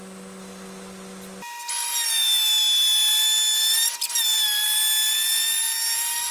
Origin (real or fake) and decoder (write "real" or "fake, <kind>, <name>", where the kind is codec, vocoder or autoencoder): real